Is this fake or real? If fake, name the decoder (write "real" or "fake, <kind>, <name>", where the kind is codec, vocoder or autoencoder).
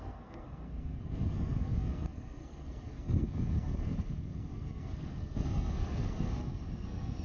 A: fake, codec, SNAC